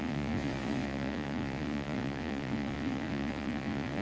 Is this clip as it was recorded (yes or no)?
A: no